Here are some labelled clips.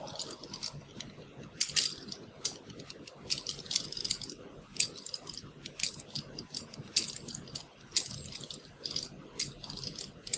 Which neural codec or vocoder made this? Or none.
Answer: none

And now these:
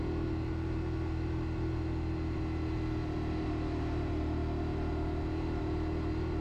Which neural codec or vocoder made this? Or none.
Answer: none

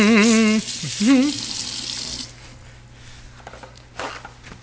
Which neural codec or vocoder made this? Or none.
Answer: none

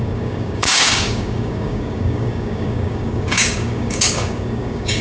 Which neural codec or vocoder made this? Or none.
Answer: codec, DAC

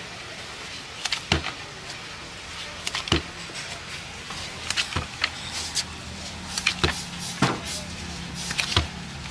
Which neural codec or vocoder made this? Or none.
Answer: none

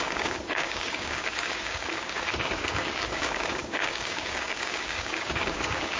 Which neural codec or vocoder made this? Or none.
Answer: codec, DAC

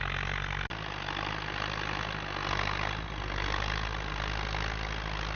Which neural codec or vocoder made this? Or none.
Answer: none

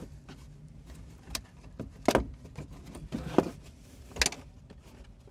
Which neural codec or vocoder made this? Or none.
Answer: none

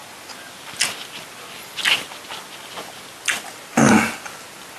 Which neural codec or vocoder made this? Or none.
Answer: none